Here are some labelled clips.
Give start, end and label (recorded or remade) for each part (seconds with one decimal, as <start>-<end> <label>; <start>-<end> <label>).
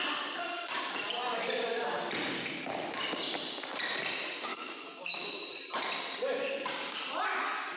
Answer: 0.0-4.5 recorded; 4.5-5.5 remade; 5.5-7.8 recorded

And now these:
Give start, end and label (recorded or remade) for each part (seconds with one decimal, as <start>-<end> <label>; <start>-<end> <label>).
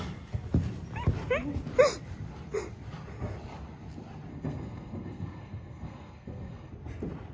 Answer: 0.0-4.3 recorded; 4.3-6.7 remade; 6.7-7.3 recorded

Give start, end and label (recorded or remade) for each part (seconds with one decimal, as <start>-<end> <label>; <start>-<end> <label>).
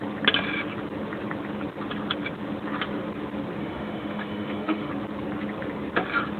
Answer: 0.0-3.6 recorded; 3.6-4.9 remade; 4.9-6.4 recorded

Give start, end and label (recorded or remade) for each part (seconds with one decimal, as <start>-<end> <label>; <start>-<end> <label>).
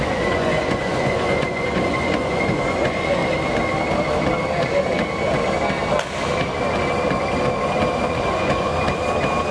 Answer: 0.0-3.2 remade; 3.2-8.1 recorded; 8.1-8.7 remade; 8.7-9.5 recorded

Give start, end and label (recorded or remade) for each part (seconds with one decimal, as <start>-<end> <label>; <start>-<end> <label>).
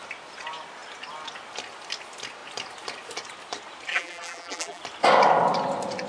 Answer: 0.0-3.9 recorded; 3.9-4.8 remade; 4.8-6.1 recorded